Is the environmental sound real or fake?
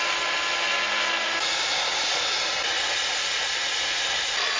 real